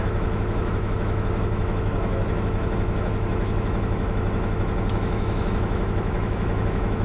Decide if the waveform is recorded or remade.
remade